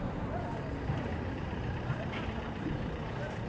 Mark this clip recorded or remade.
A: remade